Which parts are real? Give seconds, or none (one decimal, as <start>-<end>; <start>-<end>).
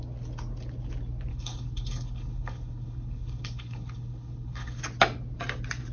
0.0-1.3; 4.8-5.9